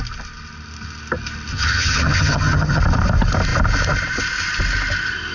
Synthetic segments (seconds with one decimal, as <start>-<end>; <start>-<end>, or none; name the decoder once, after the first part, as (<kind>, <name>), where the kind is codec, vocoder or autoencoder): 1.5-2.8 (vocoder, HiFi-GAN)